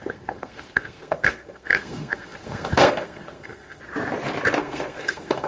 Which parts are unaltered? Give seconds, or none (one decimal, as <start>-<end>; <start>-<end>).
3.8-4.6